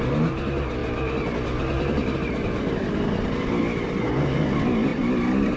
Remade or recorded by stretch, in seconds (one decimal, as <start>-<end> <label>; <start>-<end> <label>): 0.0-5.6 recorded